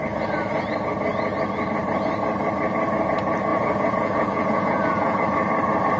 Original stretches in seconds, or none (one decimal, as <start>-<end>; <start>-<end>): 0.0-3.5; 5.2-6.0